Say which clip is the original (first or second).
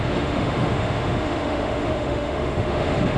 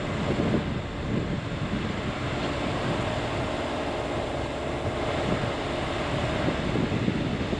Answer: second